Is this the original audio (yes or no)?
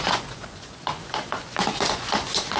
no